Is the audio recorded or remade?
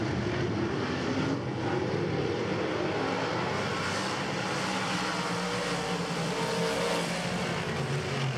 recorded